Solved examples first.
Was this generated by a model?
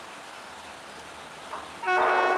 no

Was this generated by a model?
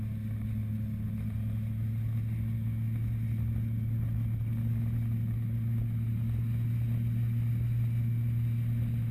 no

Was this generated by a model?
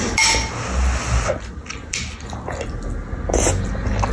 no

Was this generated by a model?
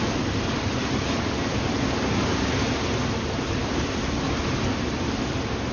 no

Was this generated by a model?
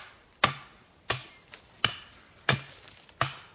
no